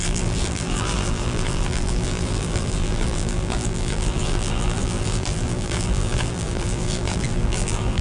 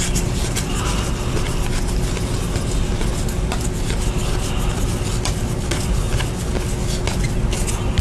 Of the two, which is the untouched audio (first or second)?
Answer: second